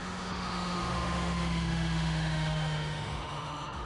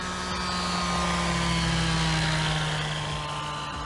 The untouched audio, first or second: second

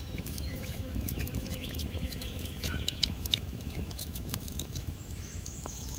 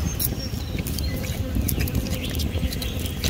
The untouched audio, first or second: second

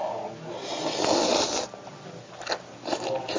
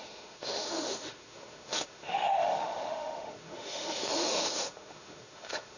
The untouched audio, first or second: first